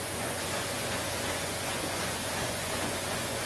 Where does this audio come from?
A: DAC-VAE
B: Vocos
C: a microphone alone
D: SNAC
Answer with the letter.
B